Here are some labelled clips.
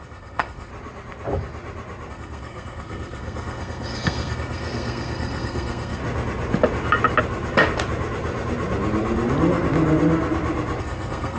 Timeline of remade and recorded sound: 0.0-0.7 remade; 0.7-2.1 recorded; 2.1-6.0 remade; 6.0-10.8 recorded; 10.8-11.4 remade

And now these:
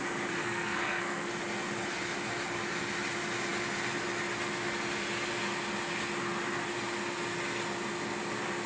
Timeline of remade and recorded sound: 0.0-0.4 recorded; 0.4-1.3 remade; 1.3-8.7 recorded

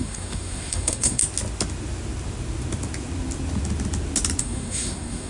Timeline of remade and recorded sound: 0.0-1.2 remade; 1.2-4.4 recorded; 4.4-5.3 remade

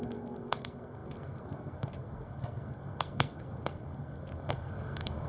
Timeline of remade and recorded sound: 0.0-5.3 remade

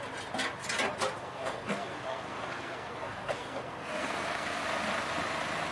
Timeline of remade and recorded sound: 0.0-1.2 recorded; 1.2-4.6 remade; 4.6-5.7 recorded

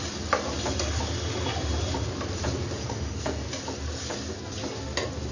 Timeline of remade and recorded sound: 0.0-2.8 recorded; 2.8-3.5 remade; 3.5-5.3 recorded